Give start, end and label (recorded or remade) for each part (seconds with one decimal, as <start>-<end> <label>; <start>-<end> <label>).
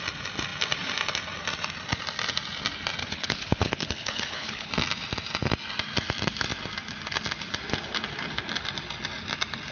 0.0-3.0 recorded; 3.0-4.7 remade; 4.7-9.7 recorded